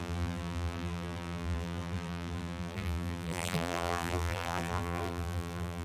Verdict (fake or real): fake